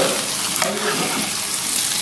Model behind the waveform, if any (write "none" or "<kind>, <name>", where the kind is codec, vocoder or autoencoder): none